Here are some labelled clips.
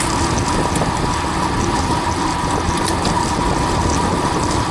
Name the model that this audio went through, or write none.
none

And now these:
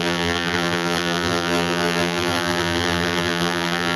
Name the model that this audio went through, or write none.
vocoder, BigVGAN v2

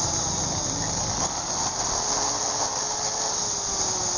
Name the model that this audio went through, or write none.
none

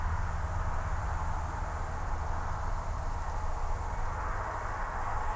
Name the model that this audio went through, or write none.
none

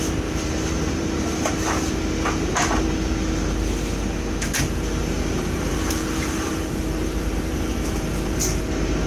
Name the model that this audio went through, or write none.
vocoder, BigVGAN v2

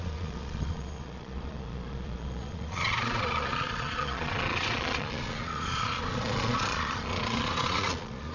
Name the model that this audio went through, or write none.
vocoder, Vocos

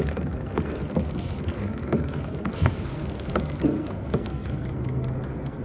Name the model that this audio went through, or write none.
codec, SNAC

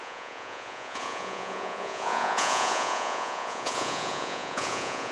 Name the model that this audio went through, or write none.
vocoder, Vocos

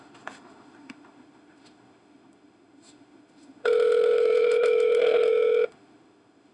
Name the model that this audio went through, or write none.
autoencoder, DAC-VAE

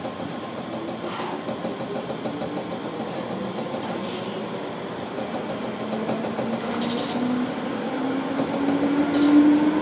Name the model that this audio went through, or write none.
none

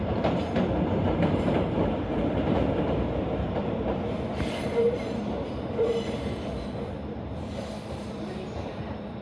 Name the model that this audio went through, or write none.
vocoder, BigVGAN v2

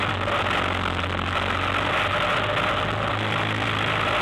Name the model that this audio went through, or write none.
none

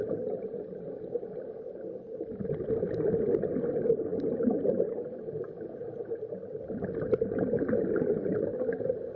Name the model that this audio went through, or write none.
none